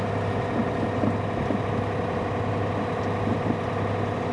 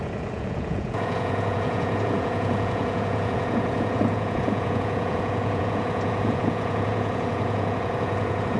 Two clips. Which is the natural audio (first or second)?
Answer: first